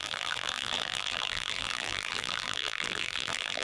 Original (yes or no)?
no